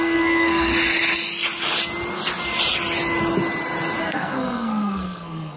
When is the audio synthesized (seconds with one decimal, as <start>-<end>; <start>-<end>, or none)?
0.0-0.7; 4.0-5.6